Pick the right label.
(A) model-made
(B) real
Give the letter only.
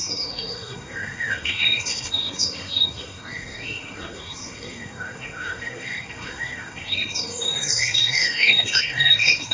A